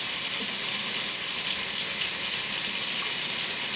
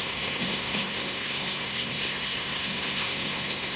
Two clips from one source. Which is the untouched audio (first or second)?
first